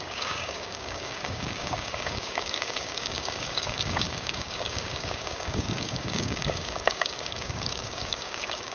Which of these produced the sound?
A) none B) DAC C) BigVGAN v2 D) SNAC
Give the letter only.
B